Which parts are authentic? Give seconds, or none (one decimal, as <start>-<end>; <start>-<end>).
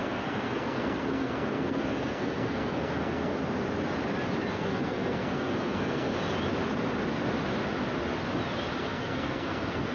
3.3-4.5; 6.1-8.8